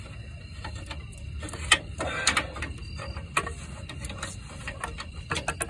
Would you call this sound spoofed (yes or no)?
no